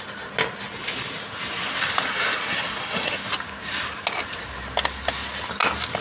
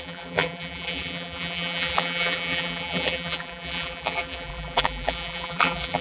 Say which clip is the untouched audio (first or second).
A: first